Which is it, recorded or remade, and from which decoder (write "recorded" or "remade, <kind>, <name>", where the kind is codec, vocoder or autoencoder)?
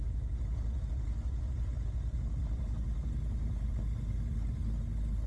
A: recorded